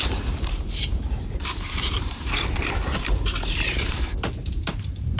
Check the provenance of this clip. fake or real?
fake